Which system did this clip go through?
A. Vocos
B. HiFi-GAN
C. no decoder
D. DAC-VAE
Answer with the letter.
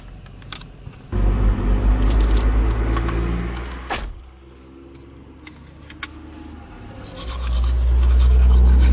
C